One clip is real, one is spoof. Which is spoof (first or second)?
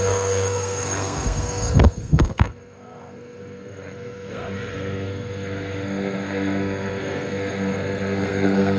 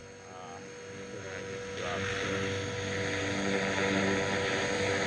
first